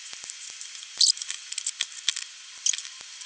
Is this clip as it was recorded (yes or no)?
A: yes